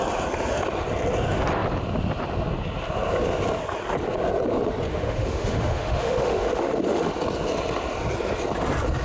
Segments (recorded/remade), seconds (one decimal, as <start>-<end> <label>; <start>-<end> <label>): 0.0-4.9 recorded; 4.9-7.1 remade; 7.1-9.0 recorded